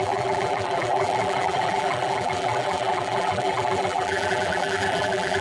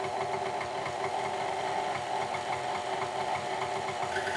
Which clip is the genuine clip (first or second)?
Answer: second